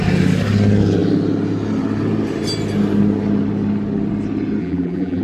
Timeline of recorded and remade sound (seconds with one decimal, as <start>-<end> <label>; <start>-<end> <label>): 0.0-4.6 recorded; 4.6-5.2 remade